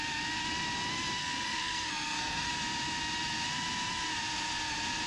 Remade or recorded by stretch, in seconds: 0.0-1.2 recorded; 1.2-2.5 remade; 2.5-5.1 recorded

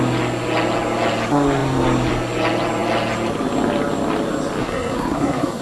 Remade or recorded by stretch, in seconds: 0.0-4.6 recorded; 4.6-5.6 remade

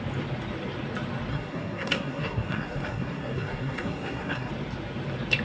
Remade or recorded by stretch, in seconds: 0.0-1.3 recorded; 1.3-4.5 remade; 4.5-5.4 recorded